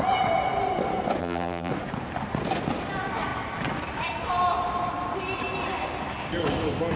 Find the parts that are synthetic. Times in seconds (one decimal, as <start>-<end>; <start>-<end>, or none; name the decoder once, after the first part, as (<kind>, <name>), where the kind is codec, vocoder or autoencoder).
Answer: 1.2-1.7 (vocoder, BigVGAN v2)